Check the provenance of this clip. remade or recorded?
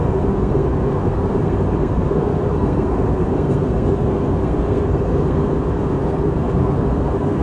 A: remade